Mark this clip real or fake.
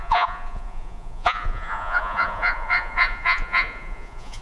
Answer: fake